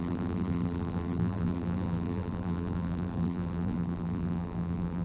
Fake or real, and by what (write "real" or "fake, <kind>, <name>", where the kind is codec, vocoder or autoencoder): fake, vocoder, BigVGAN v2